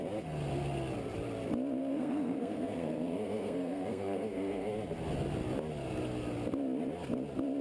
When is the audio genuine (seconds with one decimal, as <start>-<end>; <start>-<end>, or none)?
0.0-1.8; 4.7-7.6